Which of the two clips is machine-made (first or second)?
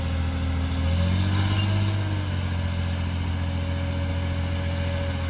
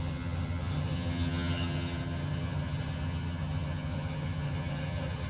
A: second